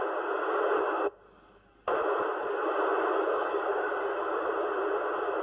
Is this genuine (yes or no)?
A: yes